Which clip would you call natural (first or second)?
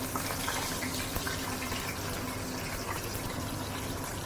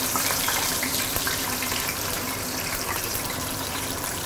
first